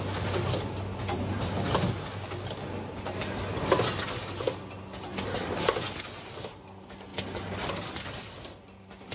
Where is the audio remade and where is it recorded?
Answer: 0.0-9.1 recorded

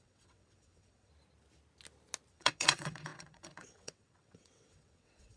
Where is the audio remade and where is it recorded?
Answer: 0.0-1.1 remade; 1.1-2.3 recorded; 2.3-5.4 remade